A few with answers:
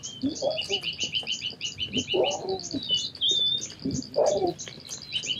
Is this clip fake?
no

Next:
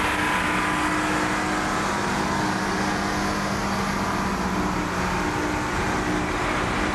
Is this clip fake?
no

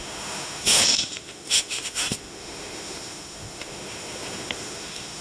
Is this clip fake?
yes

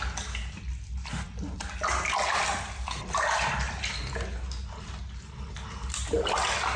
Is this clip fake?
no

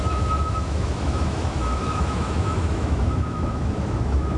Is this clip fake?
yes